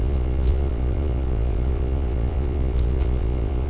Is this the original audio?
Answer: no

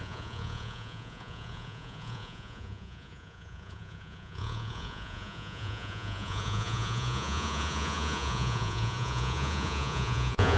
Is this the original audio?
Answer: no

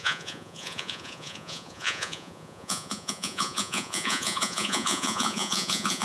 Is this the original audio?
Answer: no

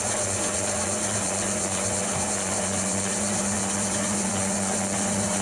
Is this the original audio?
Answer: no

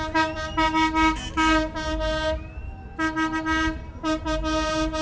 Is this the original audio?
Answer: yes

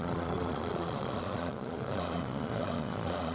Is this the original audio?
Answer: no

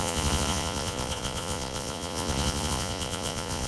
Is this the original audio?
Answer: no